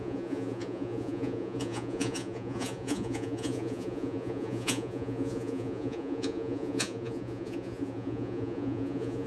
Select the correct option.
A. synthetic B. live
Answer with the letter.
A